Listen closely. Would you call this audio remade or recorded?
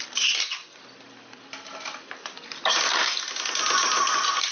recorded